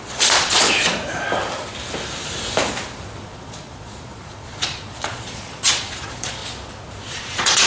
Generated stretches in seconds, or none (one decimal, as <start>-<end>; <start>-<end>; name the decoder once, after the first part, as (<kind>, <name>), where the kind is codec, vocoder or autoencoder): 0.0-1.0 (vocoder, Vocos); 3.2-6.4; 7.0-7.7